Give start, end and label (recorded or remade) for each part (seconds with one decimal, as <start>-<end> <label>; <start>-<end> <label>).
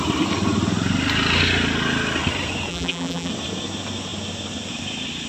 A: 0.0-2.7 recorded; 2.7-3.3 remade; 3.3-5.3 recorded